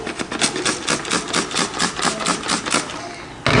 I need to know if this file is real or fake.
real